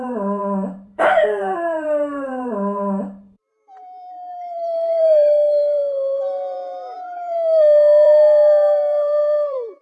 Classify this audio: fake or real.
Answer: fake